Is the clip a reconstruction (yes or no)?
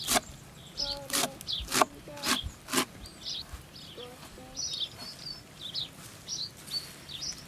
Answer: no